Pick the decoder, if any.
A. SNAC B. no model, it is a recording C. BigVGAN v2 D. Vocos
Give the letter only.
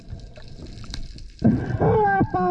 B